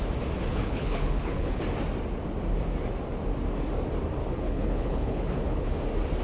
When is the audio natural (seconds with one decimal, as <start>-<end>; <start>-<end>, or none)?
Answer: 0.0-0.5; 1.6-4.2; 5.8-6.2